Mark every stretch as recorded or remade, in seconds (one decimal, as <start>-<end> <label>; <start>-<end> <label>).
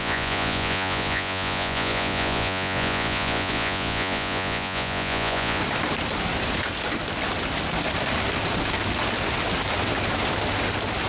0.0-5.6 remade; 5.6-11.1 recorded